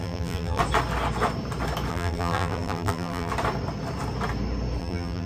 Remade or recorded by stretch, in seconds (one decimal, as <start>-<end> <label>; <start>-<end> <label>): 0.0-0.6 remade; 0.6-1.9 recorded; 1.9-3.3 remade; 3.3-4.8 recorded; 4.8-5.3 remade